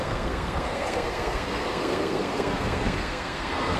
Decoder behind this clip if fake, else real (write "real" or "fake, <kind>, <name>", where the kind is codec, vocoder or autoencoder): fake, codec, SNAC